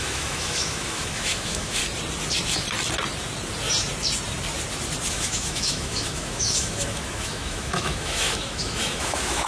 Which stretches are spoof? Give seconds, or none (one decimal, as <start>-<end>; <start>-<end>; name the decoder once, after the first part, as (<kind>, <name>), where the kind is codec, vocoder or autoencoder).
0.0-1.8 (autoencoder, DAC-VAE); 5.1-9.5